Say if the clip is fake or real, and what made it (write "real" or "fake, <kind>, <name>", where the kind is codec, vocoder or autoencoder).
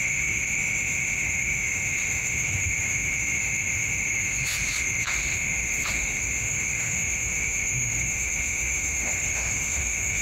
fake, autoencoder, DAC-VAE